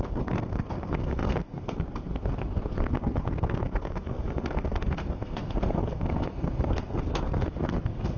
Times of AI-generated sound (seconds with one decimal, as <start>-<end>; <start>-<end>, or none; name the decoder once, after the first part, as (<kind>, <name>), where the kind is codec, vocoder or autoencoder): 0.0-8.2 (codec, SNAC)